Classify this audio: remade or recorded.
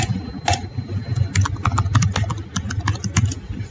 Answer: recorded